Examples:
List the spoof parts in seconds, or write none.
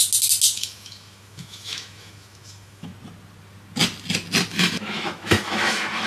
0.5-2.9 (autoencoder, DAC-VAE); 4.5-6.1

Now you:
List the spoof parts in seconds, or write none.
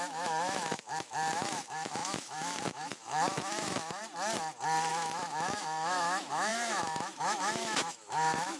0.0-4.0 (autoencoder, DAC-VAE); 4.9-8.6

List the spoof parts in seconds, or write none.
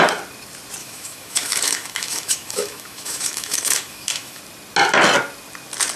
0.8-4.4 (autoencoder, DAC-VAE)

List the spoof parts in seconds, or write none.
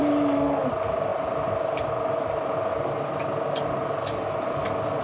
0.0-0.7 (autoencoder, DAC-VAE)